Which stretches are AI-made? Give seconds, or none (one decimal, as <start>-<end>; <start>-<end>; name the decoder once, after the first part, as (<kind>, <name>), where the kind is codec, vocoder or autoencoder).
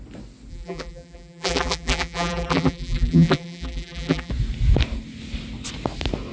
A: 0.5-4.3 (vocoder, BigVGAN v2)